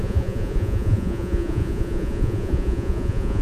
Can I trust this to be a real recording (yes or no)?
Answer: no